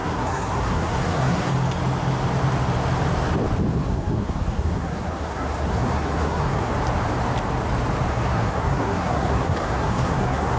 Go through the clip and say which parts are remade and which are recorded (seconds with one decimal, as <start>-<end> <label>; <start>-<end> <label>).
0.0-1.5 remade; 1.5-3.7 recorded; 3.7-6.7 remade; 6.7-8.1 recorded; 8.1-10.6 remade